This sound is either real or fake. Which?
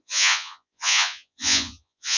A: fake